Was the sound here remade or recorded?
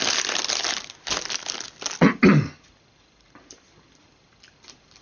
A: recorded